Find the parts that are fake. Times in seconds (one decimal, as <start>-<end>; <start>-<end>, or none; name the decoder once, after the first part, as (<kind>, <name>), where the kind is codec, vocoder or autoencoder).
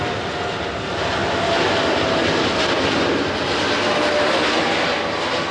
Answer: none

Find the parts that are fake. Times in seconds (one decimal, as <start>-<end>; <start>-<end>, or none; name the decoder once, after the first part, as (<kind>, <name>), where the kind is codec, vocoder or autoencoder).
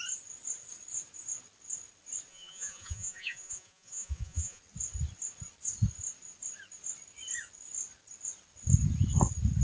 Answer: 2.3-4.6 (vocoder, Vocos)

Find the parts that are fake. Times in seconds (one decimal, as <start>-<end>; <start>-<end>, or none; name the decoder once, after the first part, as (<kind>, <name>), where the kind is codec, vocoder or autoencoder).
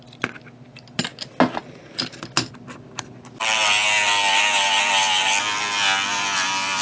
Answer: none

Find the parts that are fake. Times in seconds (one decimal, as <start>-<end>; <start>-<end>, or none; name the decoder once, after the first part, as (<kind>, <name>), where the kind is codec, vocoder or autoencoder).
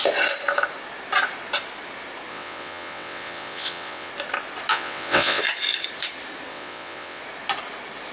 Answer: 2.3-4.1 (vocoder, WaveNeXt); 4.7-5.4; 6.5-7.2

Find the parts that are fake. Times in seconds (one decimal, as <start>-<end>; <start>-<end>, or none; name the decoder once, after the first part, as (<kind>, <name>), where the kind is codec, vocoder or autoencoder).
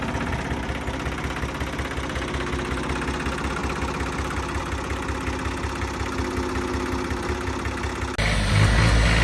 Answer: none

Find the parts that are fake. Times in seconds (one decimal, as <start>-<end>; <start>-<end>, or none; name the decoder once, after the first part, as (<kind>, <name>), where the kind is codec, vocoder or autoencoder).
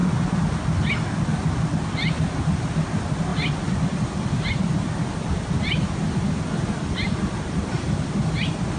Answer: 3.3-4.4 (vocoder, BigVGAN v2); 6.8-7.8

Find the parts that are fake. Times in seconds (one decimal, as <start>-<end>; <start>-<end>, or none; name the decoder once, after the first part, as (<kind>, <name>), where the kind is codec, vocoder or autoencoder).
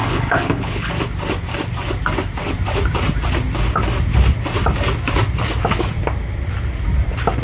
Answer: 0.0-0.9 (codec, HILCodec)